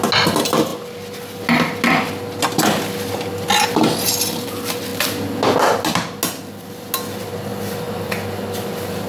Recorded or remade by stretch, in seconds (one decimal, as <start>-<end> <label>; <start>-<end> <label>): 0.0-9.1 recorded